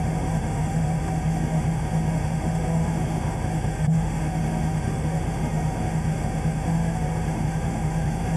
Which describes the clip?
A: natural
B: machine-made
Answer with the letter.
B